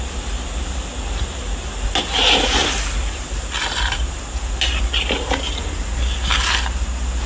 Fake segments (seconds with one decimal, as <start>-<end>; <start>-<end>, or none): none